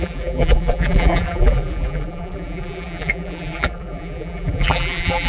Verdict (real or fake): fake